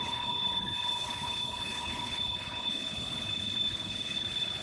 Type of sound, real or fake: fake